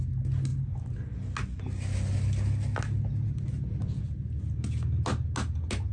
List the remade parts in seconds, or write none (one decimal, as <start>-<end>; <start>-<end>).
none